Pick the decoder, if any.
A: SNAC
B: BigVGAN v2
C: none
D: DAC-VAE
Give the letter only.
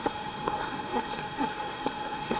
A